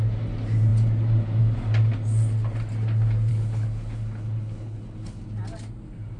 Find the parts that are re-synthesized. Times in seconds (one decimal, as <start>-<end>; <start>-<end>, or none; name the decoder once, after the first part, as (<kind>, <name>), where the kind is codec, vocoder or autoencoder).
3.3-5.2 (codec, HILCodec)